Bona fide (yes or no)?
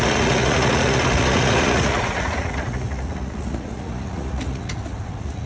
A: no